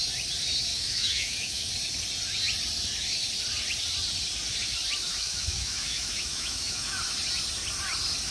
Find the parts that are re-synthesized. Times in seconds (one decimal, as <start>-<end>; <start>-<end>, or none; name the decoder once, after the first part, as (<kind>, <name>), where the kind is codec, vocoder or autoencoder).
0.7-1.7 (autoencoder, DAC-VAE); 5.1-7.0